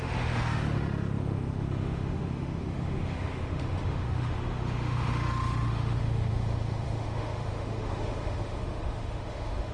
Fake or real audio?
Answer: fake